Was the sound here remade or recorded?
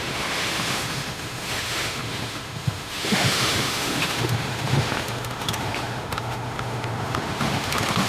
remade